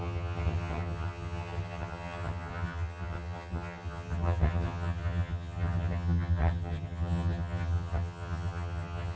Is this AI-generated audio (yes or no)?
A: yes